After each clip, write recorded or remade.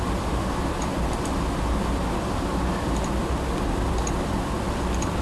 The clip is remade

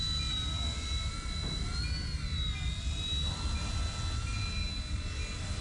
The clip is recorded